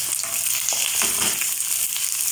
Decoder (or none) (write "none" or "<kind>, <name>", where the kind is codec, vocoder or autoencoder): vocoder, BigVGAN v2